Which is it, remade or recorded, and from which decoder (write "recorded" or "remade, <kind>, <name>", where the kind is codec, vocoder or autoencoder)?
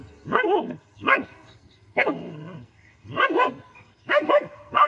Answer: remade, codec, SNAC